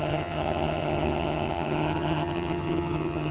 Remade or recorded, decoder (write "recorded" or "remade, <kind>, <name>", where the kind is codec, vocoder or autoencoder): remade, vocoder, HiFi-GAN